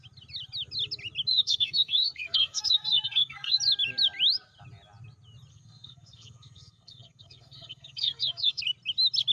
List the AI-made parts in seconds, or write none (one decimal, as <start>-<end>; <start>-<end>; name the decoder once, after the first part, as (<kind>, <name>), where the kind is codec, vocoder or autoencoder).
1.3-3.6 (codec, SNAC); 5.5-8.6